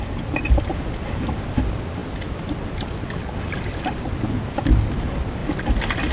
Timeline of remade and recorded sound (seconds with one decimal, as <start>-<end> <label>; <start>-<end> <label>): 0.0-6.1 recorded